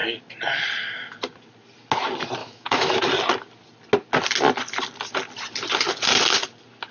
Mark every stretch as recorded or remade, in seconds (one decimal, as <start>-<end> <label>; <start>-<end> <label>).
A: 0.0-2.4 recorded; 2.4-3.0 remade; 3.0-6.9 recorded